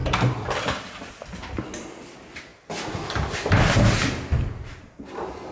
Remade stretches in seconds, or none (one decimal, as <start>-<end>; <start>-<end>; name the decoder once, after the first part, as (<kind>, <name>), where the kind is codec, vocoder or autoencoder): none